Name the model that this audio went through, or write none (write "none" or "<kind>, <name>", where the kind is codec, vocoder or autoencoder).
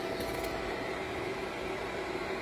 none